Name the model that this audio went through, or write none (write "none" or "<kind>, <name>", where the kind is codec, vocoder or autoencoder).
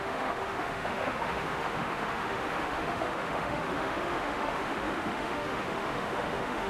autoencoder, DAC-VAE